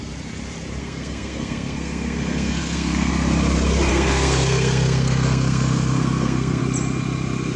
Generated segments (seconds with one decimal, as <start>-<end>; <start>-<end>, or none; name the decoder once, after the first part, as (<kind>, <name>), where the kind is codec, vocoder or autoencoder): 0.8-3.1 (codec, SNAC); 3.9-6.6